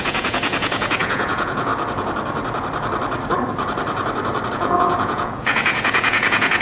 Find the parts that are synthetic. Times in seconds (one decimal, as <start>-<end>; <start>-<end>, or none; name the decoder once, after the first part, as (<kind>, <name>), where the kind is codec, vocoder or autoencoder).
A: 0.0-1.7 (vocoder, Vocos); 4.5-6.6